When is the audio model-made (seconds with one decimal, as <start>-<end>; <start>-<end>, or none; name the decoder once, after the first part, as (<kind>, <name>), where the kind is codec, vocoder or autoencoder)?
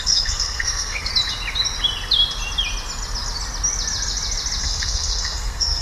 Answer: 0.0-1.1 (codec, SNAC); 4.6-5.8